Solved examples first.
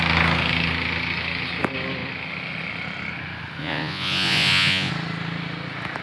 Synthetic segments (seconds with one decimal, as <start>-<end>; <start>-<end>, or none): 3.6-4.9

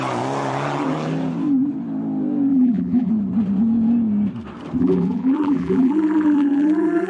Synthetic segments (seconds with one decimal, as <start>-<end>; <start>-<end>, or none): 2.5-3.1; 4.8-7.1

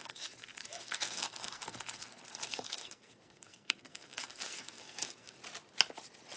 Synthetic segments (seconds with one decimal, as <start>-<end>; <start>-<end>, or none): 0.0-5.4

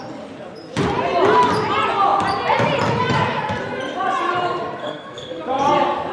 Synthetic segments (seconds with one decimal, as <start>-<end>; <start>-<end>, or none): 4.8-5.4